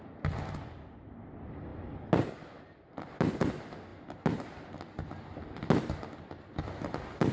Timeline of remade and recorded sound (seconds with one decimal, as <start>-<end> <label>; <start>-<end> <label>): 0.0-7.3 recorded